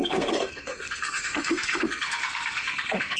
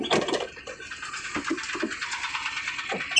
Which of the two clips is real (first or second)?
second